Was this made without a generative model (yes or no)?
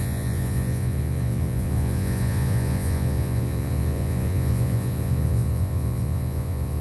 no